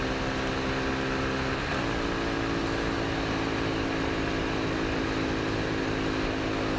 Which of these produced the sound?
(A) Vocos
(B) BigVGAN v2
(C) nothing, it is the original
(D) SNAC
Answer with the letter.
C